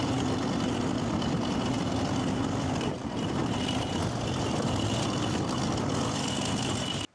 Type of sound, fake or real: real